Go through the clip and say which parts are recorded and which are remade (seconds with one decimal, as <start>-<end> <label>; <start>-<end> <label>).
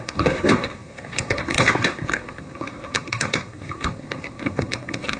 0.0-5.2 remade